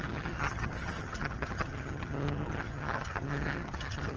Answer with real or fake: fake